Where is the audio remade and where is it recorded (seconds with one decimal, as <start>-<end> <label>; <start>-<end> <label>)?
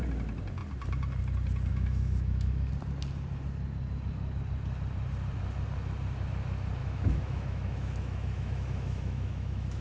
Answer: 0.0-1.7 recorded; 1.7-2.7 remade; 2.7-6.8 recorded; 6.8-9.8 remade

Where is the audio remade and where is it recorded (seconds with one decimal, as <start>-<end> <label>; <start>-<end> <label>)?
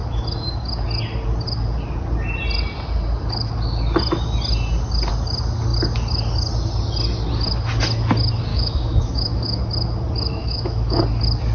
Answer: 0.0-8.5 recorded; 8.5-9.6 remade; 9.6-10.4 recorded; 10.4-11.0 remade; 11.0-11.5 recorded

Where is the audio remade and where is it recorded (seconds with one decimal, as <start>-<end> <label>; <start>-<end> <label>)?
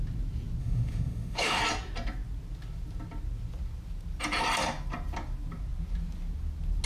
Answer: 0.0-0.6 recorded; 0.6-1.6 remade; 1.6-6.9 recorded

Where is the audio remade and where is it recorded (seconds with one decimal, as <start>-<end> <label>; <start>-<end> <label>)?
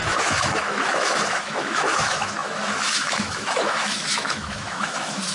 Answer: 0.0-5.3 remade